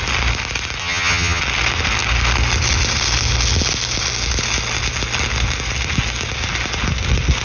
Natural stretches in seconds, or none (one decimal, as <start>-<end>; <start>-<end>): 0.0-0.8; 1.4-7.4